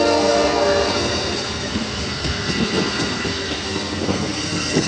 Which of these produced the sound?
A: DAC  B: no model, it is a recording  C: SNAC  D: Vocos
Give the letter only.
C